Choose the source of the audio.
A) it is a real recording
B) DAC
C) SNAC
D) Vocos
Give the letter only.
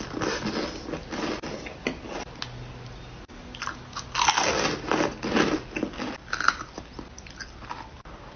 A